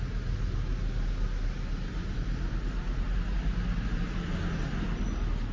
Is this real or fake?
real